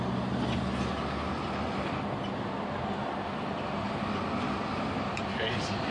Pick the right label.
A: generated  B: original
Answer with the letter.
B